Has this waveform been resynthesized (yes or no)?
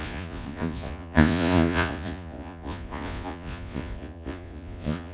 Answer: yes